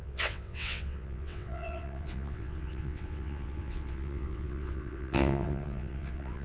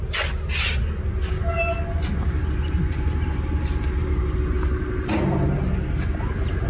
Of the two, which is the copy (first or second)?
first